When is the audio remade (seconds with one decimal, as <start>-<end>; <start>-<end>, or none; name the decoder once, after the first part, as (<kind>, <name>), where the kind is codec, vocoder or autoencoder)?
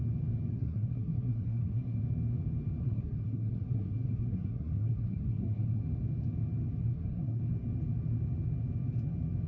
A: 0.5-2.0 (codec, SNAC); 2.8-5.8; 6.9-7.4